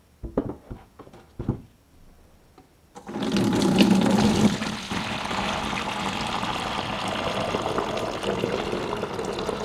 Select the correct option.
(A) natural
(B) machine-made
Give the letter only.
A